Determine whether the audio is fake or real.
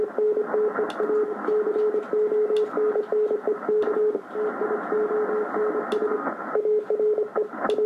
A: real